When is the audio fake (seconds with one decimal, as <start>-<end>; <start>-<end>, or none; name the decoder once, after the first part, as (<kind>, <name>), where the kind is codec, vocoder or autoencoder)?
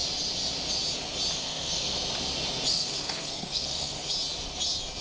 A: 1.4-2.0 (codec, SNAC); 2.7-4.1